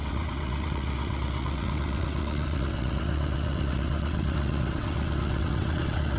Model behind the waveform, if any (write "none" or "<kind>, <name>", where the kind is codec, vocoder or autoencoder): vocoder, WaveNeXt